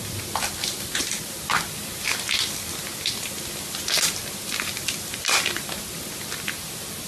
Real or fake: real